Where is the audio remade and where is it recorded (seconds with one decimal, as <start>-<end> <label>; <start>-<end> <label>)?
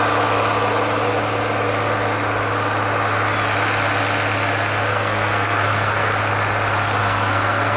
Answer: 0.0-4.9 recorded; 4.9-6.2 remade; 6.2-7.0 recorded; 7.0-7.8 remade